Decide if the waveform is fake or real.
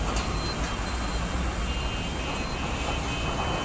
real